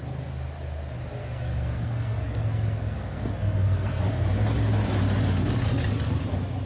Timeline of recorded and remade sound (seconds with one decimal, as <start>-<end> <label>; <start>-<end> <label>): 0.0-1.2 recorded; 1.2-4.0 remade; 4.0-6.7 recorded